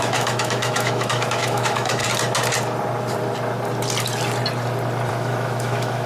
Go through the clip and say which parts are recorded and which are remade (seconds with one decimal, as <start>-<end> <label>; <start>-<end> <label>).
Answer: 0.0-2.0 remade; 2.0-5.1 recorded; 5.1-6.1 remade